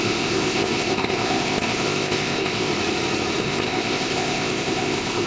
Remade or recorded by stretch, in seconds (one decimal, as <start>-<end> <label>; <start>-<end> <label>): 0.0-2.7 remade; 2.7-3.4 recorded; 3.4-5.3 remade